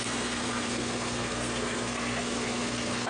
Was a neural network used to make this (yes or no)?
yes